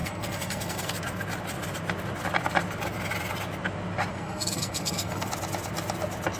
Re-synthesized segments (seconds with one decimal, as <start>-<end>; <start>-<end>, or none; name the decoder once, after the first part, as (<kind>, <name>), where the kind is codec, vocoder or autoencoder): 0.0-0.9 (codec, SNAC); 4.1-5.3